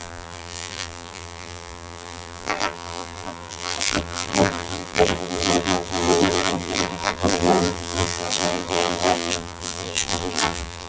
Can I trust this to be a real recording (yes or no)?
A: no